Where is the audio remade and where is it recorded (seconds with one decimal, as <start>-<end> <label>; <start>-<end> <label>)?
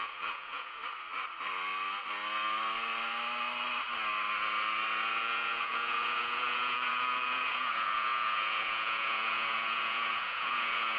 0.0-0.8 remade; 0.8-5.2 recorded; 5.2-11.0 remade